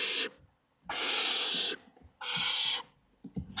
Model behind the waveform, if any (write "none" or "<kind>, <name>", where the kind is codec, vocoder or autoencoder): none